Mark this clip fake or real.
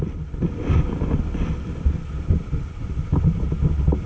real